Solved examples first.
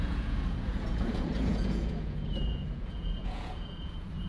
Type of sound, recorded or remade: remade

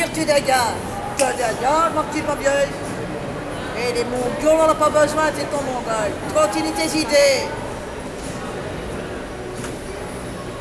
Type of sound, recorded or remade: recorded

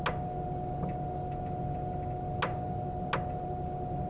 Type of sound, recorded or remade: recorded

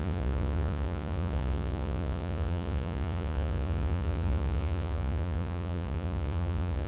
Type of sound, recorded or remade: remade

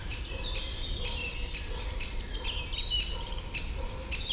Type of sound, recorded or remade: recorded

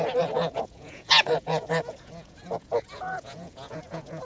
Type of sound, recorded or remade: remade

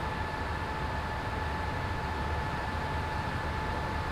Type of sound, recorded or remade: recorded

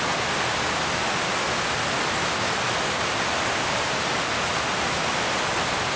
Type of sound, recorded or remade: recorded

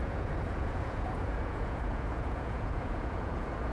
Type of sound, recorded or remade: remade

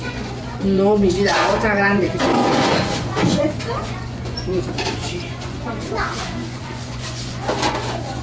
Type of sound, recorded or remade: remade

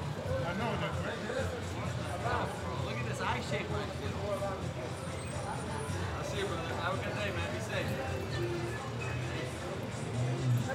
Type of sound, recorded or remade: recorded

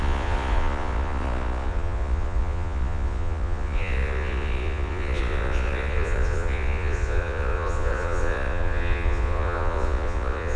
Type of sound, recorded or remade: remade